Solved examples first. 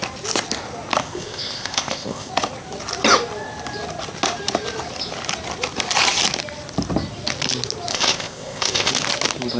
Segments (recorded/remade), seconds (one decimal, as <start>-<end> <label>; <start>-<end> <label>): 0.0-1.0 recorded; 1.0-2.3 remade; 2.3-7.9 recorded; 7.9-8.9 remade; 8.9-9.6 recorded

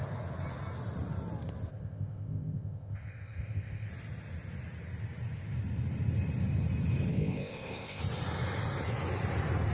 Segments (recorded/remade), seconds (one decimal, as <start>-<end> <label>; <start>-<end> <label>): 0.0-1.7 recorded; 1.7-3.9 remade; 3.9-7.1 recorded; 7.1-8.0 remade; 8.0-9.7 recorded

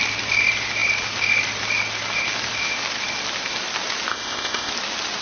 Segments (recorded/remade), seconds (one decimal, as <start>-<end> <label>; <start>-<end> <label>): 0.0-4.1 recorded; 4.1-4.7 remade; 4.7-5.2 recorded

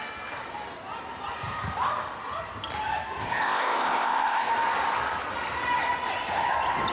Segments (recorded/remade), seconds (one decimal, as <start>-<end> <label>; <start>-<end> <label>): 0.0-3.2 recorded; 3.2-4.5 remade; 4.5-6.9 recorded

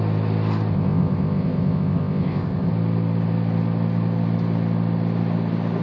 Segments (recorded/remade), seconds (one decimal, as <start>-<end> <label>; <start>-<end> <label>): 0.0-0.7 recorded; 0.7-2.7 remade; 2.7-5.8 recorded

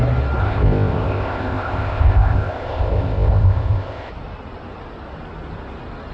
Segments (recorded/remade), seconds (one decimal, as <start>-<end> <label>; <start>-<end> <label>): 0.0-0.4 recorded; 0.4-4.1 remade; 4.1-6.1 recorded